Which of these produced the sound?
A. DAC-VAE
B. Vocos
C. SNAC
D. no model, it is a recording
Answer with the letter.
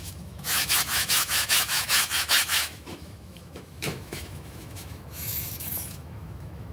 A